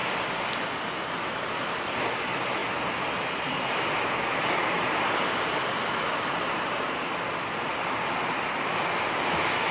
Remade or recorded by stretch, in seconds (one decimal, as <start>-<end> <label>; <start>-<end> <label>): 0.0-0.8 remade; 0.8-2.6 recorded; 2.6-3.8 remade; 3.8-9.7 recorded